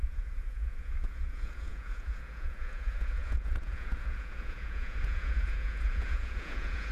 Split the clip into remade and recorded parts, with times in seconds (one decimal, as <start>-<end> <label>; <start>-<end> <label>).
0.0-6.9 remade